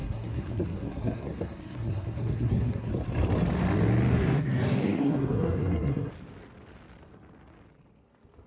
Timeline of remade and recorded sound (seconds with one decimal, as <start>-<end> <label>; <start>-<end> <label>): 0.0-2.9 remade; 2.9-4.1 recorded; 4.1-6.1 remade; 6.1-8.5 recorded